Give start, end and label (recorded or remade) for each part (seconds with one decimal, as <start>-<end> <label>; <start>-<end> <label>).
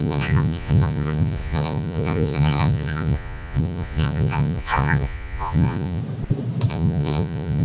0.0-6.0 remade; 6.0-6.7 recorded; 6.7-7.6 remade